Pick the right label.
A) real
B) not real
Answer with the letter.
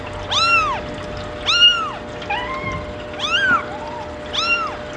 A